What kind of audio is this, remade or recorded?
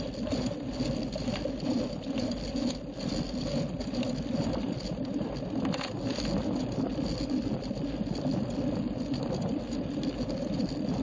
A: recorded